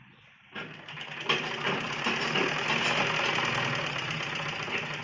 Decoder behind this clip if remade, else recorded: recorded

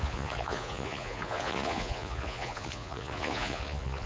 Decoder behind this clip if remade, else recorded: remade, vocoder, Vocos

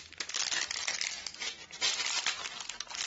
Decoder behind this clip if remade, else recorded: recorded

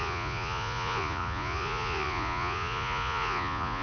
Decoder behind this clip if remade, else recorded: remade, vocoder, Vocos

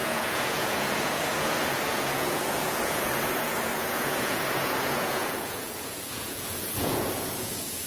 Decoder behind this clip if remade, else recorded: remade, vocoder, Vocos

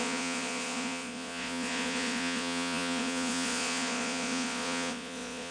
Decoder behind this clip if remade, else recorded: remade, vocoder, Vocos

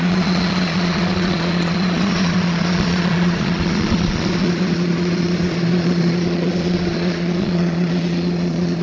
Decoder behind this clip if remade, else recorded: remade, vocoder, Vocos